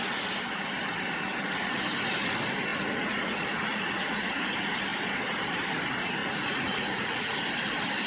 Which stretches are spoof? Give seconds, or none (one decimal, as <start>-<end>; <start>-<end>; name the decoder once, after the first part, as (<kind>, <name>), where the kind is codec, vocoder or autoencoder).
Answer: 2.7-4.3 (vocoder, Vocos); 6.2-7.4